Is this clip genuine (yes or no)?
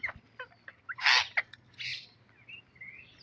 no